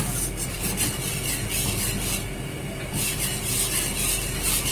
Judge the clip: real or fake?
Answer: real